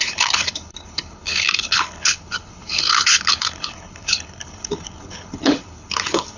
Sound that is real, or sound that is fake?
fake